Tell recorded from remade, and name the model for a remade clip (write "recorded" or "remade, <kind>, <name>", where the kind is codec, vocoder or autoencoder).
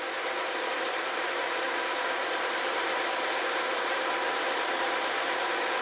remade, vocoder, BigVGAN v2